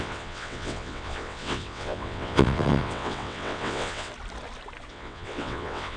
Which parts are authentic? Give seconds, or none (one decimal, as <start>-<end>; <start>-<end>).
4.1-4.9